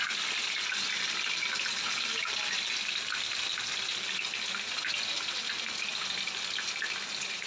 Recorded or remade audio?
recorded